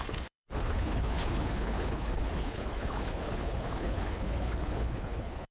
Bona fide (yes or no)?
no